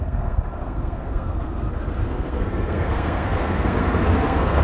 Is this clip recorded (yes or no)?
no